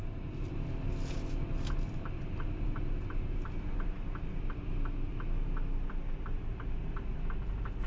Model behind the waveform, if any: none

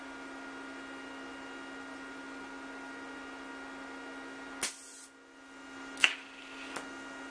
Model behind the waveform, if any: none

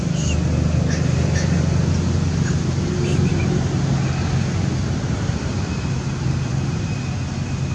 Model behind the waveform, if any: none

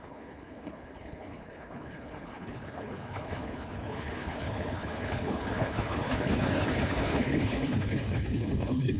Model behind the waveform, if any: codec, HILCodec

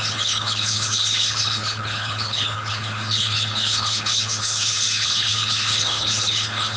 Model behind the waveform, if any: codec, HILCodec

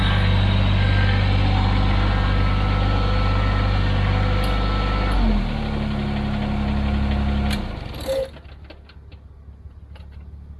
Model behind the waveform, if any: none